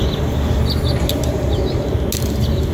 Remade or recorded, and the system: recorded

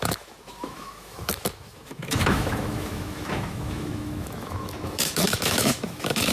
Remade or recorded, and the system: remade, autoencoder, DAC-VAE